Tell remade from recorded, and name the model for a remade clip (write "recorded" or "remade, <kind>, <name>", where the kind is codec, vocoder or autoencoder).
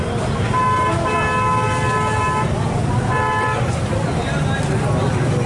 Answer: recorded